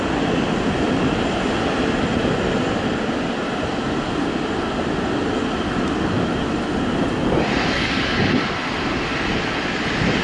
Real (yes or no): yes